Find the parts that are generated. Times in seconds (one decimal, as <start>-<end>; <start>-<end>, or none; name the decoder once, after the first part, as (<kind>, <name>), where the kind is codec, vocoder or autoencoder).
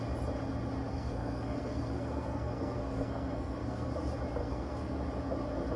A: 0.9-3.9 (codec, SNAC); 4.4-5.0